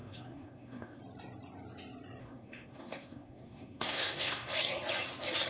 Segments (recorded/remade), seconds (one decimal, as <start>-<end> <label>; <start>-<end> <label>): 0.0-1.0 remade; 1.0-2.2 recorded; 2.2-4.5 remade; 4.5-5.5 recorded